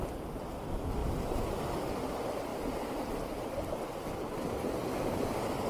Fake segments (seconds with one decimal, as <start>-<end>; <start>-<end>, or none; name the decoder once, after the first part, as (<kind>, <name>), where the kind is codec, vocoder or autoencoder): 0.0-2.5 (vocoder, BigVGAN v2); 3.0-5.7